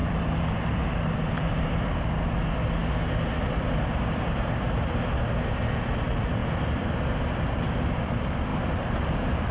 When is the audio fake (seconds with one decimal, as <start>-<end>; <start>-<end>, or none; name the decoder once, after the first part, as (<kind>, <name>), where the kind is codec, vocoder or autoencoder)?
0.0-2.2 (vocoder, BigVGAN v2); 8.5-9.5